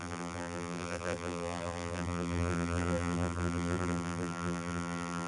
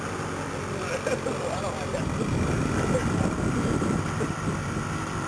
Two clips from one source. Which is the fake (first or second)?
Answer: first